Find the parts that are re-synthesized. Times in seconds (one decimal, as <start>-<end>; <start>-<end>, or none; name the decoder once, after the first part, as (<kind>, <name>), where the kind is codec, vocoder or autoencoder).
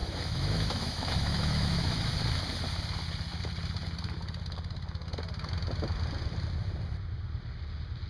0.0-2.1 (autoencoder, DAC-VAE)